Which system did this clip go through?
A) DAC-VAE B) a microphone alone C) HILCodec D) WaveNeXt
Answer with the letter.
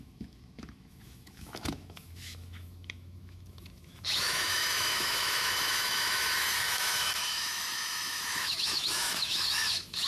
A